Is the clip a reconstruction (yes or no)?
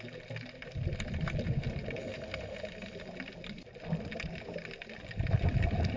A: no